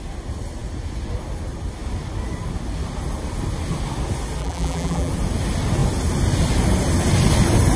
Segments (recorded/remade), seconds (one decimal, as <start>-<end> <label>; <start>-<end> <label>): 0.0-4.4 recorded; 4.4-5.1 remade; 5.1-7.8 recorded